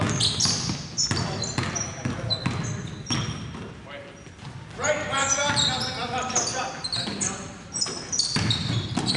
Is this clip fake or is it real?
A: real